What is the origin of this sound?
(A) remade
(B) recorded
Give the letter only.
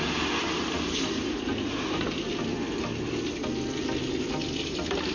B